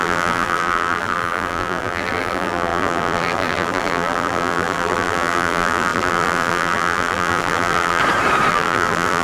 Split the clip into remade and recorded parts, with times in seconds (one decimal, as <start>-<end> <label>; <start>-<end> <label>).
0.0-8.0 remade; 8.0-8.5 recorded; 8.5-9.2 remade